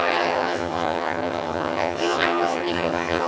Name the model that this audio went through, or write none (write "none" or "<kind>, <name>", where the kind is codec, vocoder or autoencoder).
vocoder, HiFi-GAN